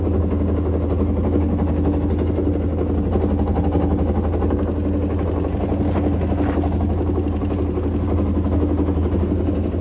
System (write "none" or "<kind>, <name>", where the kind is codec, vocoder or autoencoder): none